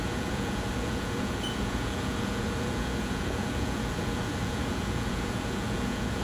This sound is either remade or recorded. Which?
remade